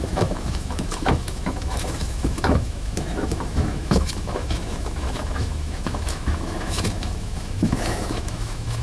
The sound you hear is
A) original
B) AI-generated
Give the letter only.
B